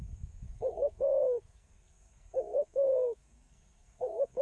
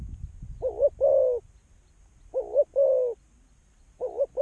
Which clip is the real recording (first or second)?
second